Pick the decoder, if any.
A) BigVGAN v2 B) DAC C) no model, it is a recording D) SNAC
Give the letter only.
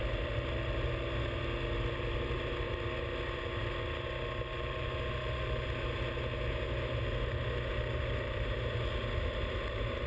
C